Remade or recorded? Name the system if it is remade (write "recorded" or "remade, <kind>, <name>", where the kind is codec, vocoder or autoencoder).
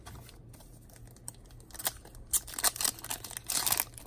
recorded